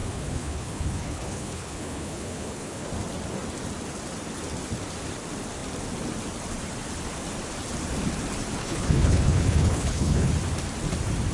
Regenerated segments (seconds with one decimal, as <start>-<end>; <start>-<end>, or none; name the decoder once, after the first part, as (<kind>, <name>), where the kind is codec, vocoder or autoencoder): 0.0-2.9 (codec, HILCodec); 8.6-10.3